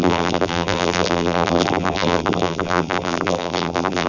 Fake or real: fake